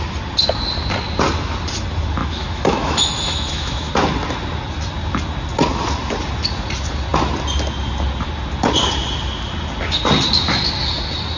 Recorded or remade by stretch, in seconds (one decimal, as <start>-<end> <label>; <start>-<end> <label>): 0.0-2.2 recorded; 2.2-3.9 remade; 3.9-11.4 recorded